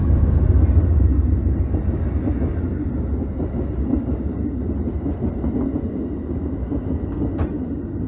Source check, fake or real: real